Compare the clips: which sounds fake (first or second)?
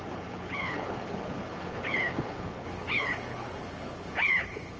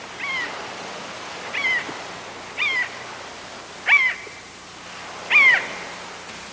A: first